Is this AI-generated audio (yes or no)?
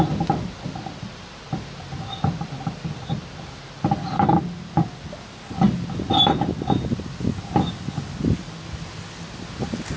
no